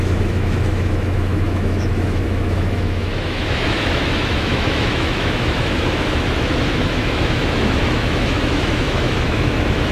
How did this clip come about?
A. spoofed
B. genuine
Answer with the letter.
A